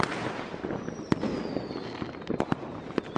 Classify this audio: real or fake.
real